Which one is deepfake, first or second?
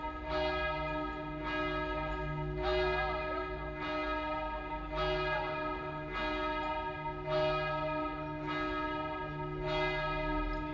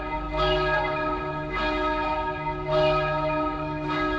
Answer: second